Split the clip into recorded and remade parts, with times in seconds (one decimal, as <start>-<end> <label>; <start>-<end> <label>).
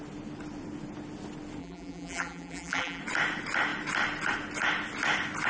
0.0-1.6 recorded; 1.6-3.0 remade; 3.0-5.5 recorded